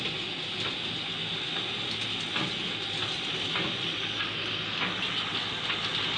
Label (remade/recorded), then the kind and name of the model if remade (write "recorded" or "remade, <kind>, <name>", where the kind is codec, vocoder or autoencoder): recorded